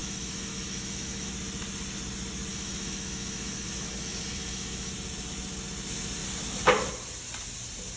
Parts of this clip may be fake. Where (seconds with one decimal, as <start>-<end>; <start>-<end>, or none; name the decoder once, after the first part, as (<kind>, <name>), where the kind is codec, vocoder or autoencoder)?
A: 0.0-1.3 (autoencoder, DAC-VAE); 2.5-4.9